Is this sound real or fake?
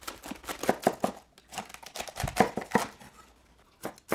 real